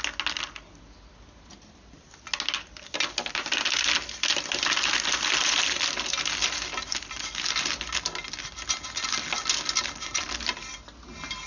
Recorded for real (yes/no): yes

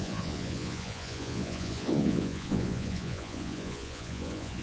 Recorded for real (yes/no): no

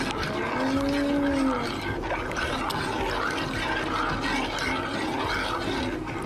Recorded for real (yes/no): yes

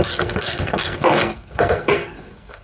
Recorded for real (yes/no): no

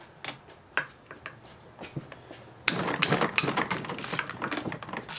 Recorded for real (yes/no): yes